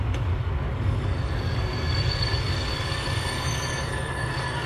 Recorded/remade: remade